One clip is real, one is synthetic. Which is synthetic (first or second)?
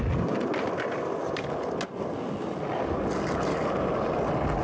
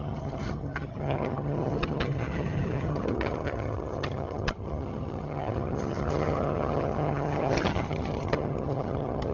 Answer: second